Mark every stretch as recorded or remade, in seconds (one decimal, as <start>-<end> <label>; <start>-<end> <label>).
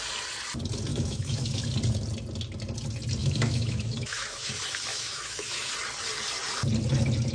0.0-0.9 recorded; 0.9-1.6 remade; 1.6-3.2 recorded; 3.2-4.5 remade; 4.5-4.9 recorded; 4.9-5.7 remade; 5.7-7.3 recorded